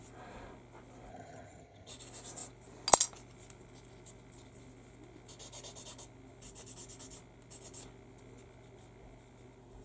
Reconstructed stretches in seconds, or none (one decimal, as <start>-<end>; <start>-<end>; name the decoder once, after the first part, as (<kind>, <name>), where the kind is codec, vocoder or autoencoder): 1.1-1.9 (vocoder, HiFi-GAN)